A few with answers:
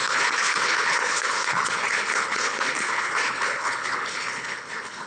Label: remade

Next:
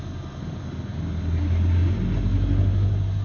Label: recorded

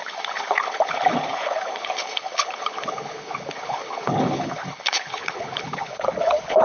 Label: remade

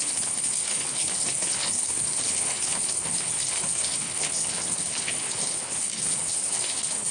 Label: remade